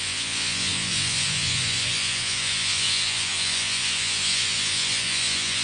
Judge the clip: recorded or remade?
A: remade